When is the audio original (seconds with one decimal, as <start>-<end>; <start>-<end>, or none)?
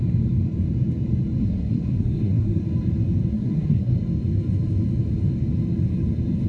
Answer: 0.0-1.4; 2.6-3.3; 3.9-6.5